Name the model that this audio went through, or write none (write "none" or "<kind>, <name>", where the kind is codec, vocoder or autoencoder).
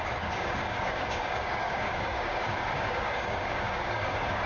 codec, DAC